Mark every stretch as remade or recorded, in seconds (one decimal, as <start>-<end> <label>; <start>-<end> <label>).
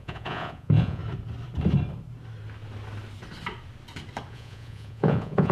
0.0-1.0 remade; 1.0-4.3 recorded; 4.3-5.5 remade